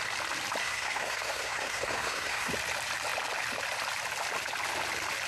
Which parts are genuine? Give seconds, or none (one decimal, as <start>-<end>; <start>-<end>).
0.0-0.6; 2.5-5.3